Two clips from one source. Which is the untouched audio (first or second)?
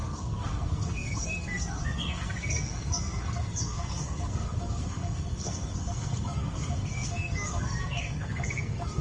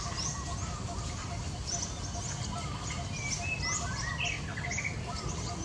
second